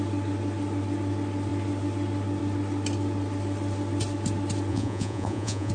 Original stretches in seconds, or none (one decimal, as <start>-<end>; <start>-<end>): 0.0-4.7

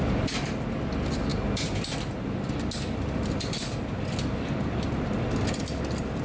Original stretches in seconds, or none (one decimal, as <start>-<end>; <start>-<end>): 0.0-6.2

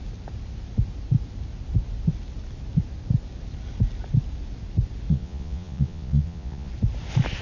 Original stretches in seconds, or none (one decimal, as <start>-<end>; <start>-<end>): 0.0-5.1; 6.7-7.4

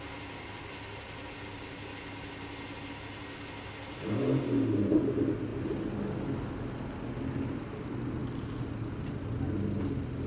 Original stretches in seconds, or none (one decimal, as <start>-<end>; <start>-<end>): 0.0-10.3

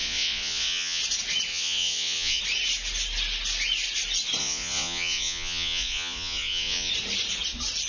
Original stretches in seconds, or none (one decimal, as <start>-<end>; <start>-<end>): 1.0-1.5; 2.4-4.4; 6.9-7.9

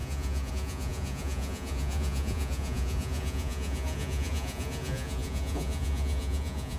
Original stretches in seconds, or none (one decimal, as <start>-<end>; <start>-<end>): none